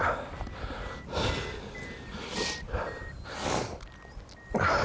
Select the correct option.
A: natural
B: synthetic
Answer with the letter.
A